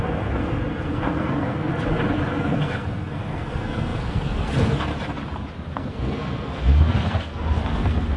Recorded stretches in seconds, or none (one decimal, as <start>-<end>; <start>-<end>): 1.7-2.4; 4.9-5.7